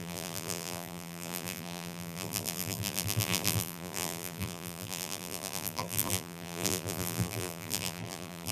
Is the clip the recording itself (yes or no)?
no